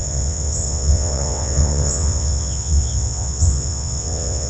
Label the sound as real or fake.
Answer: fake